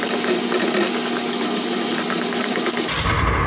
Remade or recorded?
recorded